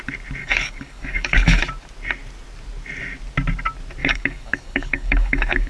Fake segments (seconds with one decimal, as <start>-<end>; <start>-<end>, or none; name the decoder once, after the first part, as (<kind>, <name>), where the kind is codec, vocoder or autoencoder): 0.4-1.6 (codec, DAC); 4.0-5.7